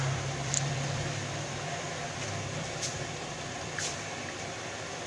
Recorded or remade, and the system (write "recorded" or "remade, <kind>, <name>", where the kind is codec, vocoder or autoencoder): remade, vocoder, BigVGAN v2